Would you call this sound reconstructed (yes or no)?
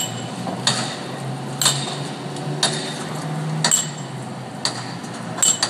no